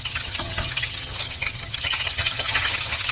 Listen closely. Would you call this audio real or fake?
fake